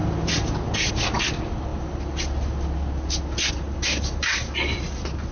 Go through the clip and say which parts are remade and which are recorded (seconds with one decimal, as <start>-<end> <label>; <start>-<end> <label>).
0.0-5.3 recorded